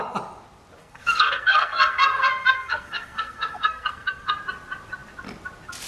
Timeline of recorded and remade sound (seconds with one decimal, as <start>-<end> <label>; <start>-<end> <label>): 0.0-0.8 recorded; 0.8-4.3 remade; 4.3-5.9 recorded